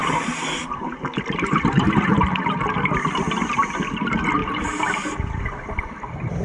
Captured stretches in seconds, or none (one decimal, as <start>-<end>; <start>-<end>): 2.4-4.4; 5.4-6.4